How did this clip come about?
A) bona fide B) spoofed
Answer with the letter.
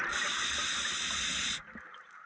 A